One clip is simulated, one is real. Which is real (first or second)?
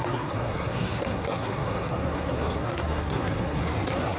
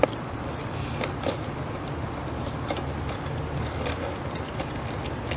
second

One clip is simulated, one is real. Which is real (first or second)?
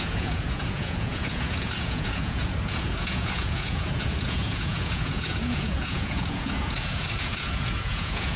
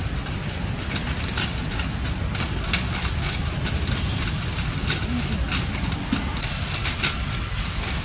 second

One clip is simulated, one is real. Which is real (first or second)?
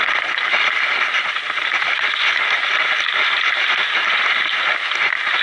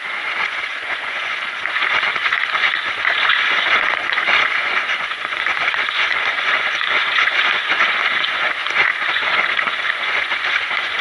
first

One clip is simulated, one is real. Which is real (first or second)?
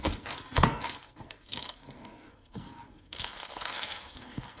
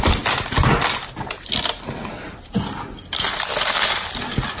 second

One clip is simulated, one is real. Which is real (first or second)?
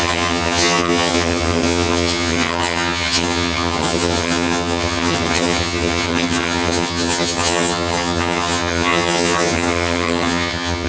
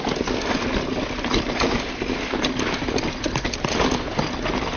second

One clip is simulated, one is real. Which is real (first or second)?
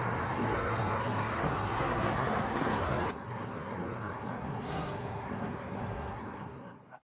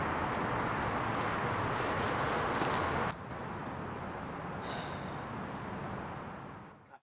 second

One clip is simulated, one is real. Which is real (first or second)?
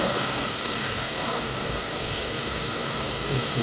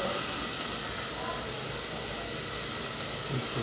second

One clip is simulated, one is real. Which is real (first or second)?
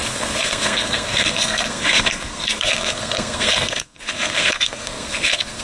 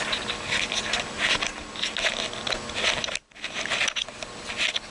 second